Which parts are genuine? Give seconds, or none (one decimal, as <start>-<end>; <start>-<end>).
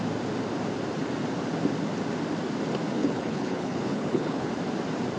0.0-3.0; 4.5-5.2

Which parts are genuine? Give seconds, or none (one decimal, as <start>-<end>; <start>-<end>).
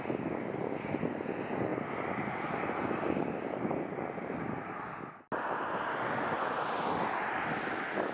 0.0-8.1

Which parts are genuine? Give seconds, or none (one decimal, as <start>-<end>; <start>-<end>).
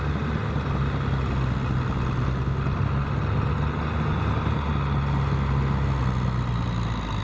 0.0-7.2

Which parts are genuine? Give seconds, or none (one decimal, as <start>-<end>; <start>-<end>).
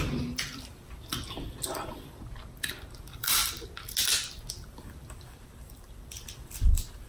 1.1-3.0; 3.4-4.5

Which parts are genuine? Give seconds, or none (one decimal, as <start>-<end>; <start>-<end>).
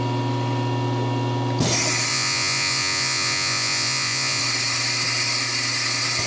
0.0-2.1; 4.4-6.3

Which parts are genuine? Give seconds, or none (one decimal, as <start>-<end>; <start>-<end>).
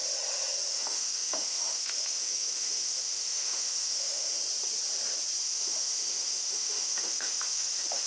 0.0-0.7; 4.4-5.4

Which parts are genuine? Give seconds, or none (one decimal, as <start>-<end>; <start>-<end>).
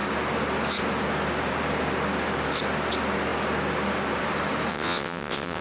0.0-4.7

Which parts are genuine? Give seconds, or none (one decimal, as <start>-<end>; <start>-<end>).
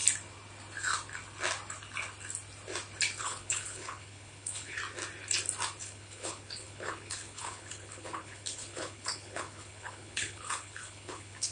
0.0-3.2; 4.8-5.8